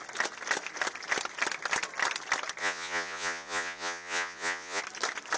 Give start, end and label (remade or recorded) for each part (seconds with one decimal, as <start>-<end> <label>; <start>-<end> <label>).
0.0-2.6 recorded; 2.6-4.8 remade; 4.8-5.4 recorded